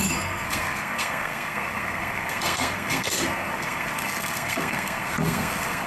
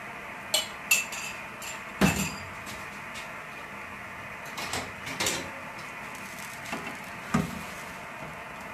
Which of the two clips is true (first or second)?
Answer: second